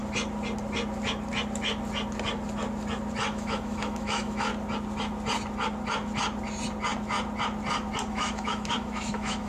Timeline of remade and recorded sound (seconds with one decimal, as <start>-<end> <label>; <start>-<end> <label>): 0.0-3.3 recorded; 3.3-4.5 remade; 4.5-8.1 recorded; 8.1-9.5 remade